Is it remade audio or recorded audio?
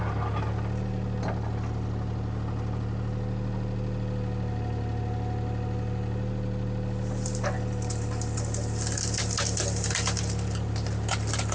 recorded